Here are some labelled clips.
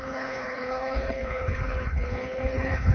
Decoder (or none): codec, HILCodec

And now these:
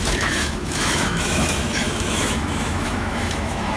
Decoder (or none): autoencoder, DAC-VAE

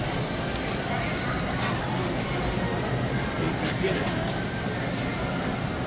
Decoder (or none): none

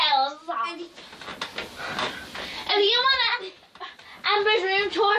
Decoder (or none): none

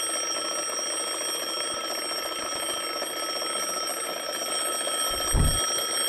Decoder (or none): none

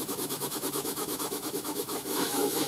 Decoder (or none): autoencoder, DAC-VAE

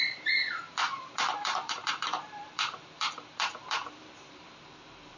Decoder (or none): vocoder, BigVGAN v2